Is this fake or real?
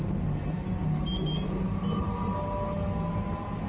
real